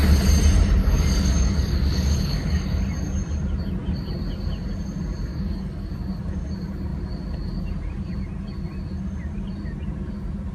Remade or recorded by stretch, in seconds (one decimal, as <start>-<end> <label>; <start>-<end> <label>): 0.0-0.8 recorded; 0.8-2.8 remade; 2.8-5.3 recorded; 5.3-5.9 remade; 5.9-10.5 recorded